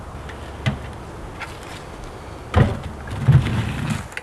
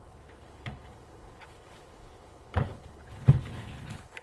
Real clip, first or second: first